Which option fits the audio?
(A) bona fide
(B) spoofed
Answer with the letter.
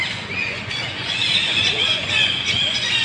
B